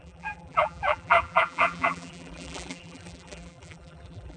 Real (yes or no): no